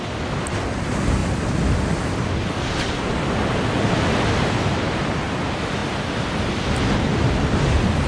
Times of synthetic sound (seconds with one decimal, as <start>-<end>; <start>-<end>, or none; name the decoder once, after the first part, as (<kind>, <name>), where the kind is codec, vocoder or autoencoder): none